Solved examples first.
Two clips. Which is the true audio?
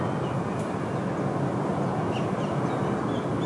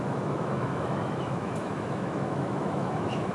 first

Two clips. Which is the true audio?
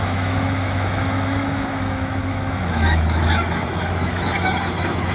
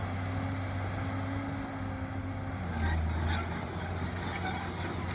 second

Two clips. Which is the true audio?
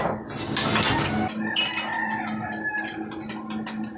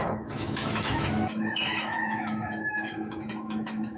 first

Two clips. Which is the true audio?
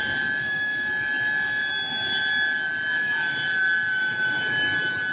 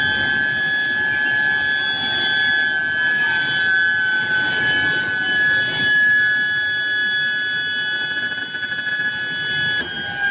second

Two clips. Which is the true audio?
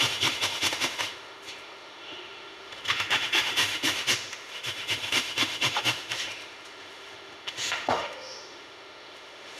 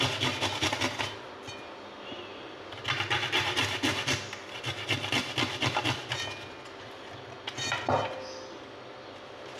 second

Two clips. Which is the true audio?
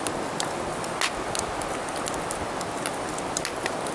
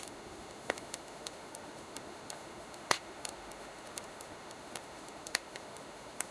first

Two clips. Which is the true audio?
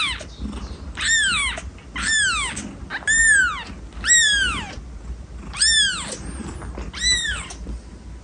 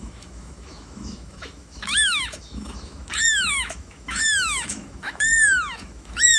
first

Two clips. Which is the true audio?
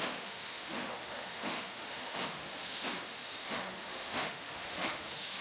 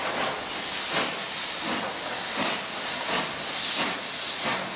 second